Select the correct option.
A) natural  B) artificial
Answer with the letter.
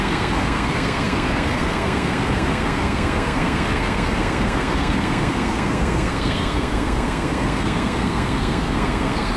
B